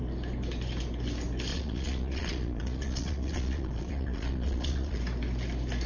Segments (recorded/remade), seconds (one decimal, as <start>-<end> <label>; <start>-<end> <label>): 0.0-1.5 recorded; 1.5-5.0 remade; 5.0-5.9 recorded